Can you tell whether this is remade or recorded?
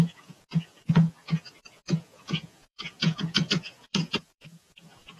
remade